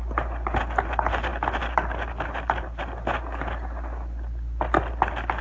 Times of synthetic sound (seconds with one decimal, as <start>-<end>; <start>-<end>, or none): none